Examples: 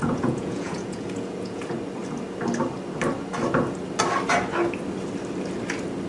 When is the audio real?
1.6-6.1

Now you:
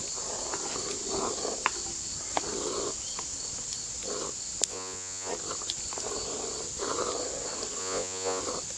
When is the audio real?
0.0-4.7; 5.3-7.8; 8.4-8.8

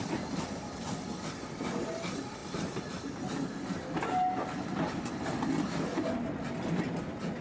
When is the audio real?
0.0-7.4

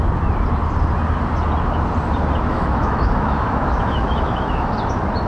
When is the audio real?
0.0-2.5; 4.7-5.3

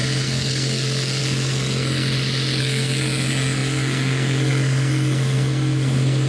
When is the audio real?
2.1-2.6

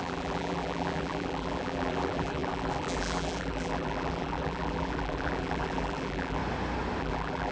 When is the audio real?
6.4-7.0

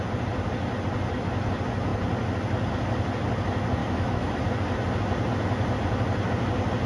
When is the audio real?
0.0-3.8; 4.4-6.9

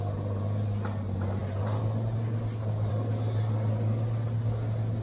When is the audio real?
0.0-5.0